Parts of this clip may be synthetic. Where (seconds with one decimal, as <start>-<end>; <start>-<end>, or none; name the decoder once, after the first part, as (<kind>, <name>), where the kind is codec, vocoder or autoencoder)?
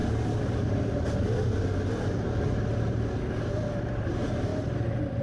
4.5-5.2 (vocoder, BigVGAN v2)